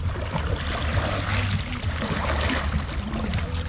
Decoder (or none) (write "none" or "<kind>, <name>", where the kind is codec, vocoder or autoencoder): none